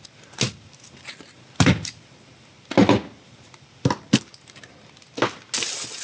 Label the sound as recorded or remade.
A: recorded